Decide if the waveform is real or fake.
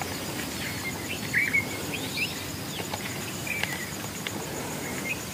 real